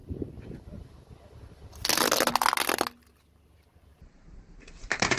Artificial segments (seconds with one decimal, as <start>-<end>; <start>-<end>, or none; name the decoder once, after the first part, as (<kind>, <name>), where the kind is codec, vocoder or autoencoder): 3.9-5.2 (vocoder, BigVGAN v2)